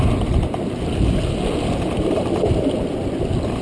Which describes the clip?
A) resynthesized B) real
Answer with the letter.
B